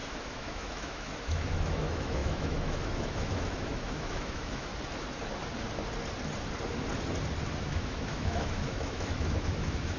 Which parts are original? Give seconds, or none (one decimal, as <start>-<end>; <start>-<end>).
4.7-7.6